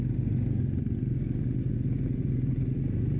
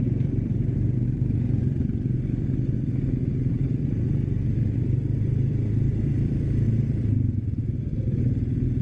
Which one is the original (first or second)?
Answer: first